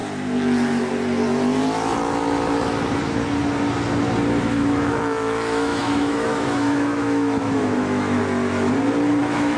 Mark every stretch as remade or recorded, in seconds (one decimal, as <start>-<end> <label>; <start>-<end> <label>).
0.0-4.5 recorded; 4.5-8.2 remade; 8.2-9.2 recorded; 9.2-9.6 remade